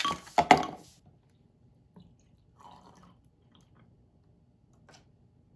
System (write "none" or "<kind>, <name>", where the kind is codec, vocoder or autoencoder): none